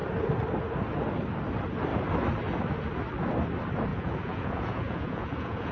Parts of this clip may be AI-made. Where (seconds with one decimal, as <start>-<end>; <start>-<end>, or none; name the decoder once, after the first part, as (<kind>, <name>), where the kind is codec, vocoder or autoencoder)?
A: 3.9-5.7 (vocoder, Vocos)